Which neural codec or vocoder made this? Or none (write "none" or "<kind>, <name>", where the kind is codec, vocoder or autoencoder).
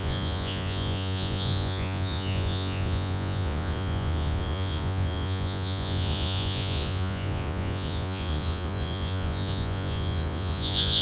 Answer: vocoder, Vocos